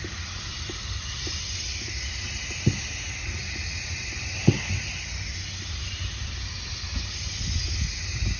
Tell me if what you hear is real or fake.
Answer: real